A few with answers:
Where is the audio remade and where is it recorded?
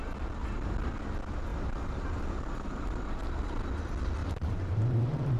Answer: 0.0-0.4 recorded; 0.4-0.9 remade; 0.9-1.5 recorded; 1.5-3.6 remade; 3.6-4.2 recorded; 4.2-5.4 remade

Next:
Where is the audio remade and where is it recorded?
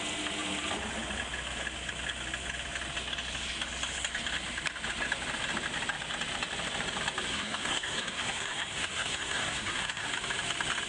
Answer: 0.0-7.3 recorded; 7.3-10.1 remade; 10.1-10.9 recorded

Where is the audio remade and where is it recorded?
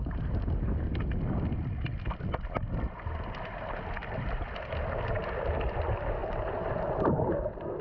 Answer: 0.0-4.0 recorded; 4.0-4.6 remade; 4.6-7.8 recorded